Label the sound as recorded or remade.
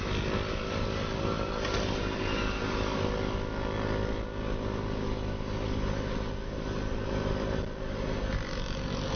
recorded